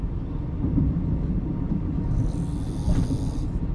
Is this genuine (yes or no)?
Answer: yes